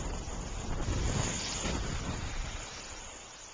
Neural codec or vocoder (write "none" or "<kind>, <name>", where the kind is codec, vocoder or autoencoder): none